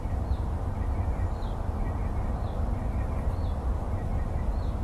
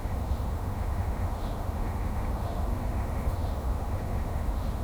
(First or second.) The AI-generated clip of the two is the second